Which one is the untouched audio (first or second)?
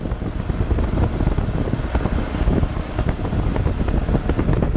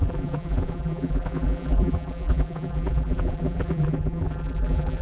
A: first